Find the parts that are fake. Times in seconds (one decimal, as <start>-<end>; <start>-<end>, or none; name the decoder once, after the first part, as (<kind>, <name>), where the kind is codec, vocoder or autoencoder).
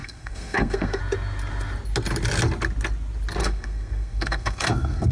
0.0-1.0 (codec, SNAC); 3.4-5.1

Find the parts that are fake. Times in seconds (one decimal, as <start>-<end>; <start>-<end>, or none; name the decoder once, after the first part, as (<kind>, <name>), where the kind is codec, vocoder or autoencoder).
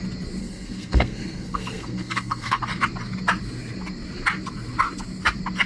0.4-2.6 (codec, SNAC)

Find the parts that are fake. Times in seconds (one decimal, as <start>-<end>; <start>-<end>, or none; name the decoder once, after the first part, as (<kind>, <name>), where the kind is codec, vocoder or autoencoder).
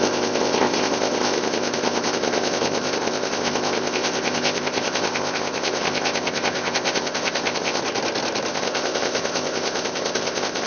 0.0-7.8 (codec, ZipCodec); 8.5-10.7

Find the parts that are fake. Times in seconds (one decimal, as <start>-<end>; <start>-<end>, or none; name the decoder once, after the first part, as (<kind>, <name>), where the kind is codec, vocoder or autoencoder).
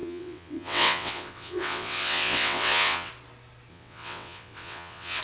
0.0-3.1 (vocoder, WaveNeXt); 3.7-5.2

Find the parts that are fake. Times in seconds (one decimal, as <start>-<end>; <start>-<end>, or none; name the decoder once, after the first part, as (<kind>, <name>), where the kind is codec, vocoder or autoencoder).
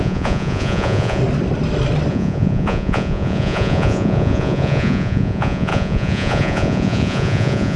0.0-1.2 (vocoder, Vocos); 2.1-7.8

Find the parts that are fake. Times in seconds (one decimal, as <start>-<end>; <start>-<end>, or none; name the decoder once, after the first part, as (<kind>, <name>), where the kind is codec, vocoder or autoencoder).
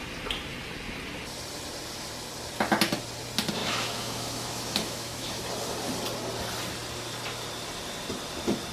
3.6-5.4 (autoencoder, DAC-VAE)